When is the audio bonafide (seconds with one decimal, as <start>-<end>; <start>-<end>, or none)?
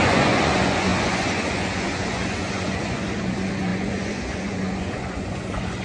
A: none